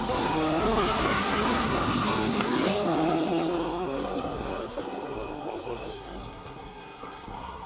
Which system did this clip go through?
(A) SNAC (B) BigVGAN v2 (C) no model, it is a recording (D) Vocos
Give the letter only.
A